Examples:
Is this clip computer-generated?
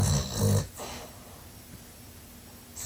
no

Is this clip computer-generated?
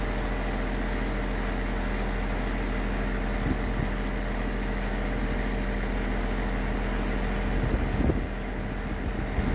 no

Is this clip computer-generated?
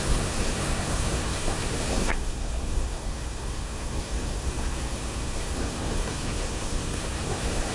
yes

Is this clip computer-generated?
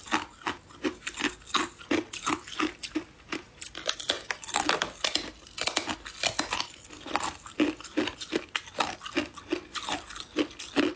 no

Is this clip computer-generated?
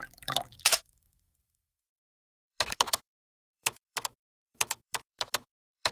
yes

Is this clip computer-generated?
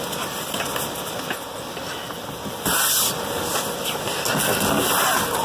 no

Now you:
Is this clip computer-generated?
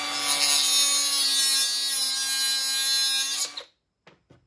no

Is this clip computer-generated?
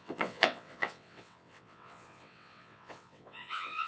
yes